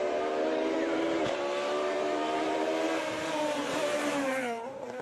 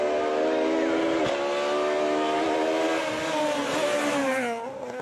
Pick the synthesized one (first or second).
first